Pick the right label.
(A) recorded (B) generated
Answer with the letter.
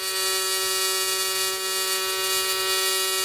A